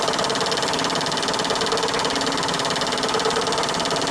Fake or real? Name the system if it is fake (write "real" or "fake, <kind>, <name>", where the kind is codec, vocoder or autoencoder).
real